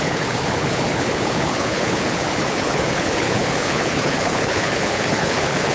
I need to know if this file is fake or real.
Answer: fake